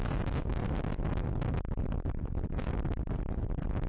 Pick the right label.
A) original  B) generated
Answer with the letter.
A